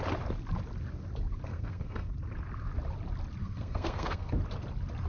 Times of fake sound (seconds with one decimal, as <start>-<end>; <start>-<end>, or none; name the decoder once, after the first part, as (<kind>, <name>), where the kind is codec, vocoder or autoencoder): 1.5-2.1 (codec, SNAC); 3.4-4.3